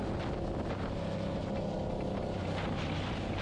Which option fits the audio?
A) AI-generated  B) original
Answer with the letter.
B